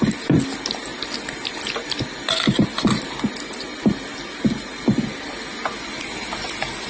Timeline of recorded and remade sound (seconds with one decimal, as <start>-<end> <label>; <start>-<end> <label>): 0.0-6.9 recorded